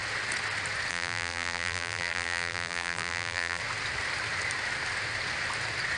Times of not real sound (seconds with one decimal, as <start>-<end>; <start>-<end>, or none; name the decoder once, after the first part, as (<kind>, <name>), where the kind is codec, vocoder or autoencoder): 0.9-3.6 (vocoder, BigVGAN v2)